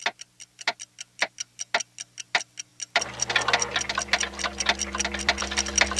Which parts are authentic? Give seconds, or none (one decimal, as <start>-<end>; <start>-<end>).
0.0-6.0